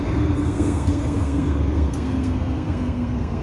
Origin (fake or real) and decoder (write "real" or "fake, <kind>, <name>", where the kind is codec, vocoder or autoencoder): fake, codec, SNAC